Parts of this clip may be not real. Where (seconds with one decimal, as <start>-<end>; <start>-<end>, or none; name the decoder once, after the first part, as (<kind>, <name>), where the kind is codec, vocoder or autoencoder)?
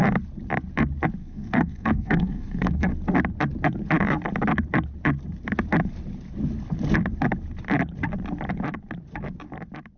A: 1.2-2.9 (codec, SNAC)